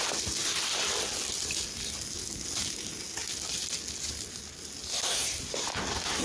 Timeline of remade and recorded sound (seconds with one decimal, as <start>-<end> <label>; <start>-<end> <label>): 0.0-6.2 recorded